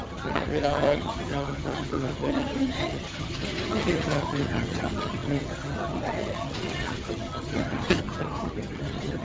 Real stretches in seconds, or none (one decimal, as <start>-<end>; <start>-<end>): none